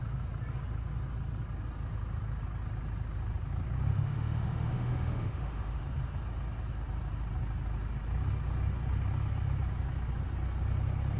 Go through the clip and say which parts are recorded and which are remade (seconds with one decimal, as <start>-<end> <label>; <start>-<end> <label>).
0.0-3.9 recorded; 3.9-5.8 remade; 5.8-11.2 recorded

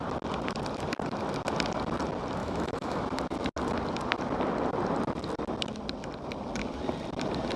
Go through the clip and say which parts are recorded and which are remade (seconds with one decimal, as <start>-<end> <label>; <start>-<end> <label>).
0.0-2.4 recorded; 2.4-3.0 remade; 3.0-7.6 recorded

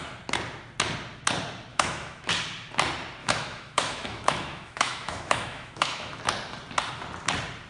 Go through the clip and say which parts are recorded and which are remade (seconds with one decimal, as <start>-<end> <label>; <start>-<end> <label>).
0.0-1.7 recorded; 1.7-2.3 remade; 2.3-3.2 recorded; 3.2-6.2 remade; 6.2-7.7 recorded

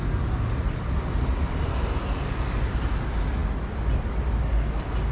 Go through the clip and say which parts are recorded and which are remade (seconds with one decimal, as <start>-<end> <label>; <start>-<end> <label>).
0.0-5.1 recorded

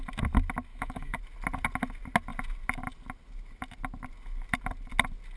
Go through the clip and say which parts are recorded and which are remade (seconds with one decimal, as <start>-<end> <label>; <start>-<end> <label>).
0.0-0.7 recorded; 0.7-1.2 remade; 1.2-5.4 recorded

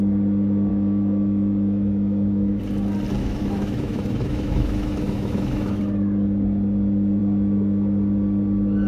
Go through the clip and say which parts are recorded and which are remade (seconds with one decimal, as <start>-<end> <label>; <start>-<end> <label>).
0.0-0.7 recorded; 0.7-2.6 remade; 2.6-3.2 recorded; 3.2-5.8 remade; 5.8-8.9 recorded